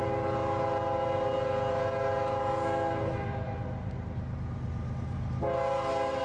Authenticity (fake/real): real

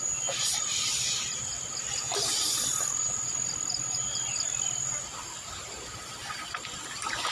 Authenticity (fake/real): fake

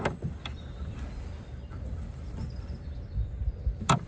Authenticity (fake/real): fake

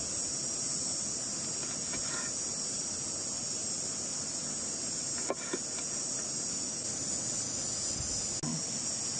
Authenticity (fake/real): real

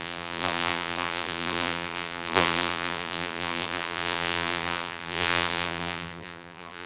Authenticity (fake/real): fake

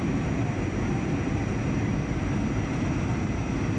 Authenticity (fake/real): fake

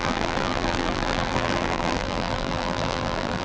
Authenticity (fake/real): fake